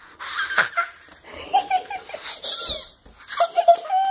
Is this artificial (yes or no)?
no